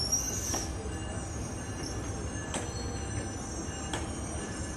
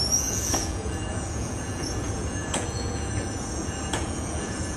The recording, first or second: first